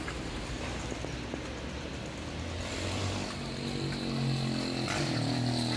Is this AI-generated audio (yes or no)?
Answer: no